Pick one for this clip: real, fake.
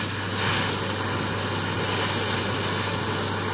real